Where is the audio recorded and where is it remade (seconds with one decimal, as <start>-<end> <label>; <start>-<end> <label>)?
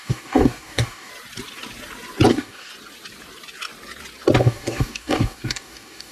0.0-1.1 remade; 1.1-2.3 recorded; 2.3-2.7 remade; 2.7-4.4 recorded; 4.4-6.1 remade